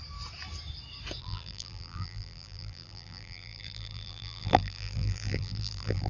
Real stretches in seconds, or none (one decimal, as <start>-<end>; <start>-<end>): 0.0-1.2